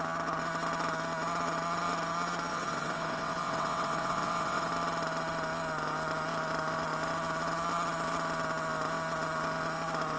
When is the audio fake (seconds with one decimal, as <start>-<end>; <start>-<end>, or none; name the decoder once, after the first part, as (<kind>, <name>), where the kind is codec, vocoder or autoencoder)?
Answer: 2.5-4.7 (vocoder, WaveNeXt)